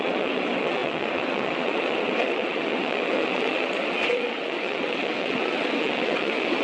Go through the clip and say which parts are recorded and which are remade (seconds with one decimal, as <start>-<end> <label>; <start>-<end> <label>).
0.0-6.6 remade